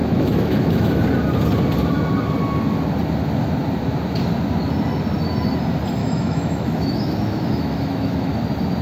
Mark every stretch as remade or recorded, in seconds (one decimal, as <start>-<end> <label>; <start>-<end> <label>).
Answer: 0.0-1.0 remade; 1.0-6.0 recorded; 6.0-8.3 remade; 8.3-8.8 recorded

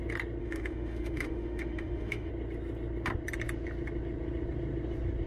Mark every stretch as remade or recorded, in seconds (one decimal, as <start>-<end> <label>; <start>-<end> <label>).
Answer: 0.0-0.4 recorded; 0.4-2.3 remade; 2.3-5.3 recorded

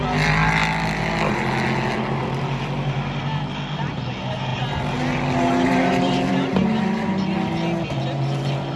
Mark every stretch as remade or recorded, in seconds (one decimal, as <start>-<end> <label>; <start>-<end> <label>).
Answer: 0.0-8.8 recorded

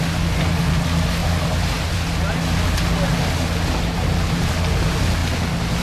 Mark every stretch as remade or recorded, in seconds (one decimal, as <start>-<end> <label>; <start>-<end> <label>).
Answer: 0.0-5.8 recorded

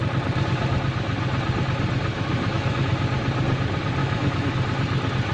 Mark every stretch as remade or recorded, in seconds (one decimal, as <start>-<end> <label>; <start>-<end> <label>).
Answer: 0.0-2.1 recorded; 2.1-2.8 remade; 2.8-4.0 recorded; 4.0-4.5 remade; 4.5-5.3 recorded

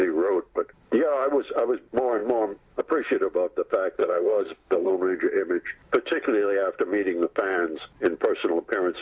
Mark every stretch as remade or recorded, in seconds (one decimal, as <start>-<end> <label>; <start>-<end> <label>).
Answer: 0.0-4.0 recorded; 4.0-4.9 remade; 4.9-9.0 recorded